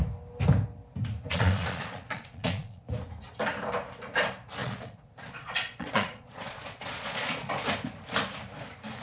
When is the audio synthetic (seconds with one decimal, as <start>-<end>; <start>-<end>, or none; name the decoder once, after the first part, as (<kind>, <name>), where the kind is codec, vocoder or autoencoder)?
1.3-2.8 (vocoder, Vocos); 4.6-7.5